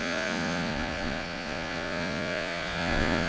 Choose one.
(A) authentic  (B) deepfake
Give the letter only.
B